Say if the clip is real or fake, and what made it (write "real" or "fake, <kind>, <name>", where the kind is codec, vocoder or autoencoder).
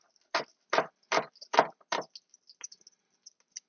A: real